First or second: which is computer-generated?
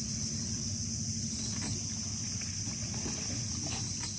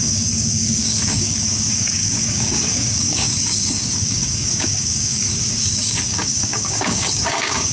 second